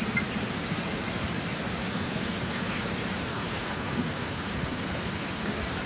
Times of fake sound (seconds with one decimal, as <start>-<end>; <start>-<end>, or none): 1.8-2.8; 3.3-5.5

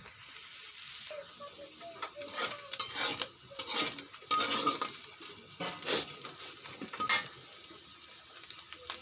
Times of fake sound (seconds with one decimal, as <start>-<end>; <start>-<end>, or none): none

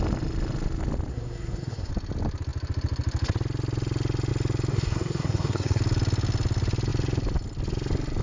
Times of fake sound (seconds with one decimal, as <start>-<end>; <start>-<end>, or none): 1.1-1.9; 4.7-5.8

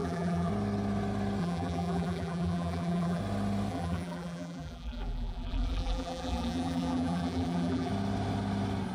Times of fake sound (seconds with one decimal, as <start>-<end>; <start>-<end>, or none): 0.0-0.5; 1.4-3.2; 3.7-7.9